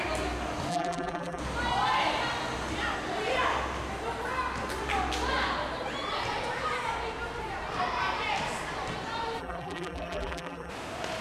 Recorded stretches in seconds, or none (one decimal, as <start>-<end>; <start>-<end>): 0.0-0.7; 1.4-9.4; 10.7-11.2